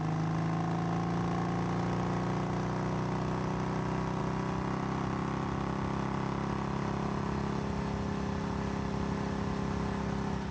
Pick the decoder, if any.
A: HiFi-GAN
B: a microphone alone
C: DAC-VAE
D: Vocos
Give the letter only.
B